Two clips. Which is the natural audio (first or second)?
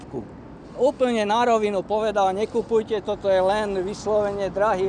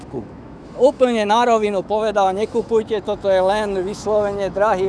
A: first